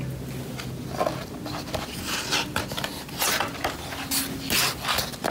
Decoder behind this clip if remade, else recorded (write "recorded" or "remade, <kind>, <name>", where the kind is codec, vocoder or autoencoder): recorded